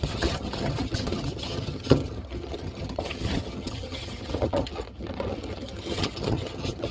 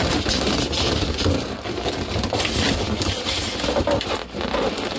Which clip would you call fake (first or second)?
first